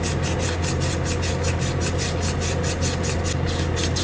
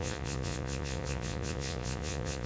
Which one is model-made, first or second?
second